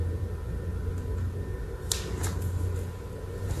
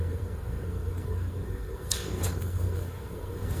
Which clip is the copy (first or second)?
second